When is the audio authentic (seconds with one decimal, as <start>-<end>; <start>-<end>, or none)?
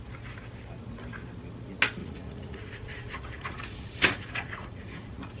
0.0-2.0